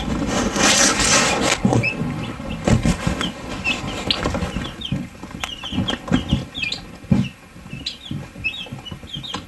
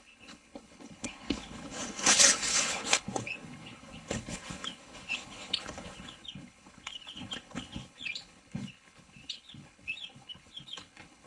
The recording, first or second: first